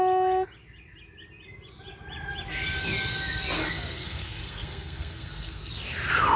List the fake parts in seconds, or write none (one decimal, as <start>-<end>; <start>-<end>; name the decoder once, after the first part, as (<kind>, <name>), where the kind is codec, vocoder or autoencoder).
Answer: 3.6-5.7 (codec, SNAC)